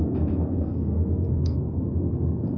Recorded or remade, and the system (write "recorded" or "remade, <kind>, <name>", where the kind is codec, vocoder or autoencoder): remade, codec, SNAC